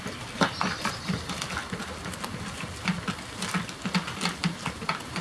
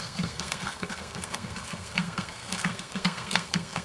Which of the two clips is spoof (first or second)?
second